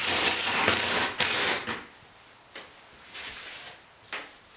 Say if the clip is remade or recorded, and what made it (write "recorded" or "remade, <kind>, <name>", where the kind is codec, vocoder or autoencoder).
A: recorded